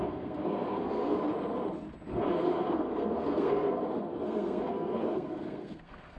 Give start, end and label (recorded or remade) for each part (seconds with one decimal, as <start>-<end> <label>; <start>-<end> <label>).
0.0-1.3 remade; 1.3-2.3 recorded; 2.3-6.2 remade